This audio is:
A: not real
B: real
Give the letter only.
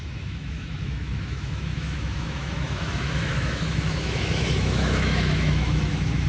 A